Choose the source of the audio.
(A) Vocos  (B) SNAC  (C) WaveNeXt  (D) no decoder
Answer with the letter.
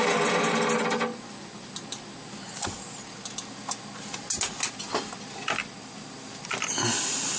D